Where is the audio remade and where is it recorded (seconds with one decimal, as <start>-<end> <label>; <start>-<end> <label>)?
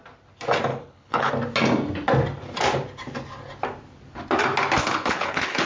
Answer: 0.0-0.7 recorded; 0.7-1.3 remade; 1.3-4.8 recorded; 4.8-5.7 remade